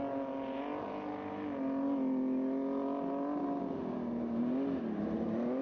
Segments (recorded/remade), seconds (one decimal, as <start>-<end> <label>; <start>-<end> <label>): 0.0-5.6 recorded